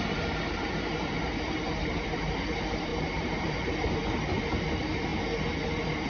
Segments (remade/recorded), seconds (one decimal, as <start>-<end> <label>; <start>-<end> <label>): 0.0-5.1 remade; 5.1-6.1 recorded